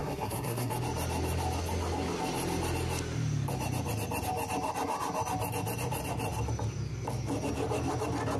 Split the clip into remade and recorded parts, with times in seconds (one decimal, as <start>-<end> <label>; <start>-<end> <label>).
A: 0.0-0.7 remade; 0.7-8.4 recorded